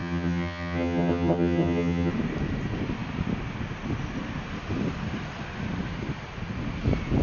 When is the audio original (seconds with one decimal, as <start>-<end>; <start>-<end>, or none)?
2.1-7.2